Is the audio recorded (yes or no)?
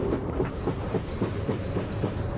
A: no